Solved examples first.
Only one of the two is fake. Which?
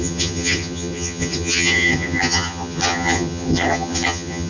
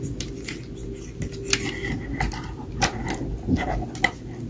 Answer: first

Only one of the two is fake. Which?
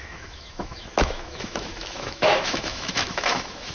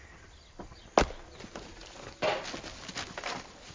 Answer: first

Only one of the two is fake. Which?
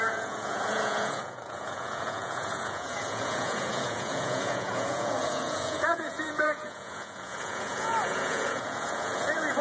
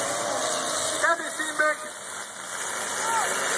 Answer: first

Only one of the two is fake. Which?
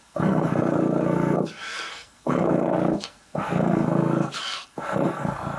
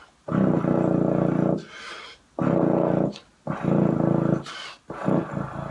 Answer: first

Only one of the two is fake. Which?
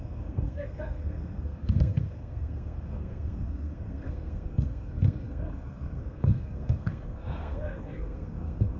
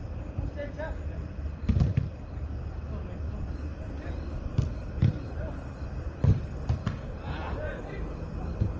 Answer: first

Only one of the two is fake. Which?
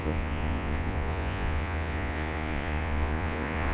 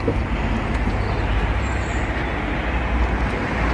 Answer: first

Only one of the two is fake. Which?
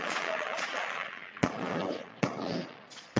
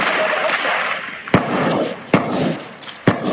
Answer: first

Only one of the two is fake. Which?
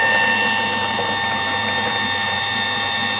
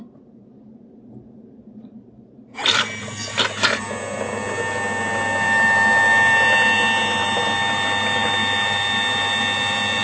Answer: first